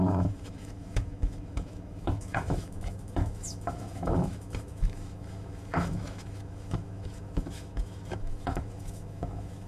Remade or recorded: remade